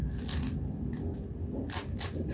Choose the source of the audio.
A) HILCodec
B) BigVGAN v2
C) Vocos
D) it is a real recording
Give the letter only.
D